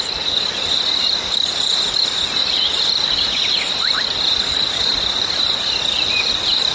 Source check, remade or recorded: recorded